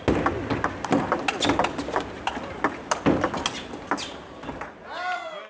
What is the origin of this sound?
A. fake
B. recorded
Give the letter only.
B